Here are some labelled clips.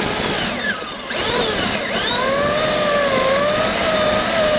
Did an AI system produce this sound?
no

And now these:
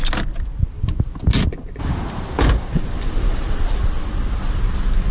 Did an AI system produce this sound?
no